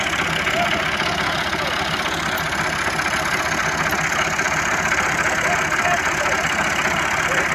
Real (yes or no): yes